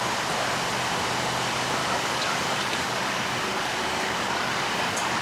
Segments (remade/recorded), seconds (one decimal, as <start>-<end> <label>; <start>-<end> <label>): 0.0-1.8 recorded; 1.8-5.2 remade